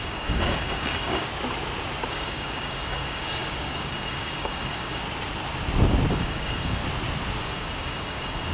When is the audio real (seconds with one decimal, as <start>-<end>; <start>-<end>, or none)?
1.3-2.1; 5.0-6.1; 6.8-7.4